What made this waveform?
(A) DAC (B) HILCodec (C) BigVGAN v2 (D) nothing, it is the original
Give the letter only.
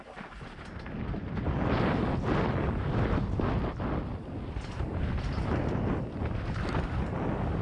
D